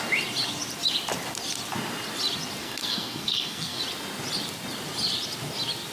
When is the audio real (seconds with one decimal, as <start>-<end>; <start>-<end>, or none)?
0.0-2.6; 3.8-5.9